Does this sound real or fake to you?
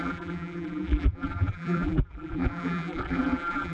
fake